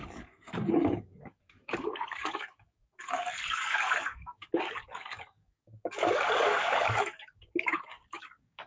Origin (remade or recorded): remade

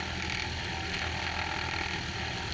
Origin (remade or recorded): recorded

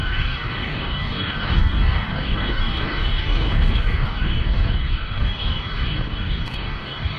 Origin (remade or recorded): remade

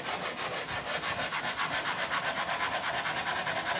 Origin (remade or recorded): recorded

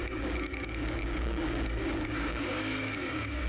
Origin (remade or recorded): remade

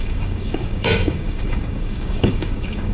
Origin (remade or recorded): remade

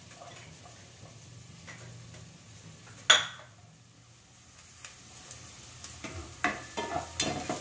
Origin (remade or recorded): recorded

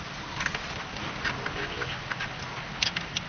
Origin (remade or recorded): recorded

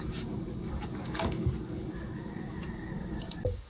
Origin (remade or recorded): remade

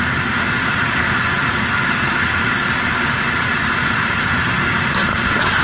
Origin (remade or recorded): recorded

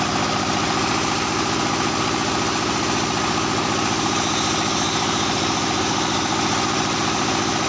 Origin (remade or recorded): recorded